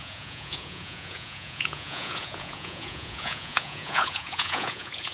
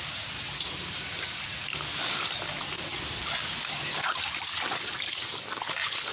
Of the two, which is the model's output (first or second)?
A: first